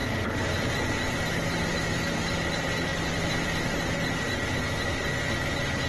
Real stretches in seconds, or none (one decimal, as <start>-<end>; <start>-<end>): 0.0-5.9